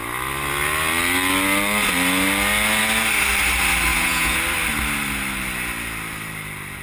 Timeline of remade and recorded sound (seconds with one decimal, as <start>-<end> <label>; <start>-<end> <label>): 0.0-3.9 recorded; 3.9-4.4 remade; 4.4-6.8 recorded

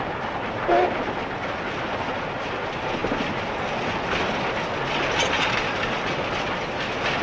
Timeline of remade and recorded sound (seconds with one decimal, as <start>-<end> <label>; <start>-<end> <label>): 0.0-7.2 recorded

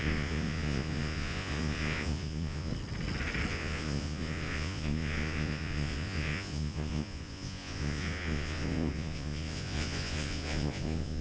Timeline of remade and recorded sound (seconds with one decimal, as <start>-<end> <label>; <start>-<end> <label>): 0.0-2.7 remade; 2.7-3.5 recorded; 3.5-11.2 remade

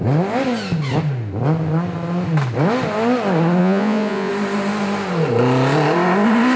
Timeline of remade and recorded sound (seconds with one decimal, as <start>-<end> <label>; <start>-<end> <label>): 0.0-3.6 recorded; 3.6-4.3 remade; 4.3-6.6 recorded

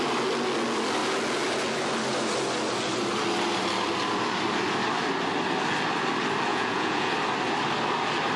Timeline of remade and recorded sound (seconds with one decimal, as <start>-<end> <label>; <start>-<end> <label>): 0.0-6.5 recorded; 6.5-7.1 remade; 7.1-8.4 recorded

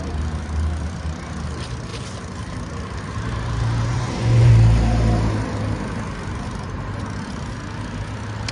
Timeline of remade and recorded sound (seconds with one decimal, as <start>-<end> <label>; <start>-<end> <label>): 0.0-3.9 recorded; 3.9-4.5 remade; 4.5-8.5 recorded

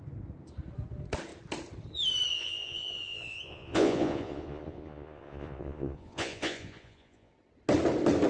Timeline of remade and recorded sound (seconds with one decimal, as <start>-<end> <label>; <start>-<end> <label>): 0.0-2.3 recorded; 2.3-7.3 remade; 7.3-8.3 recorded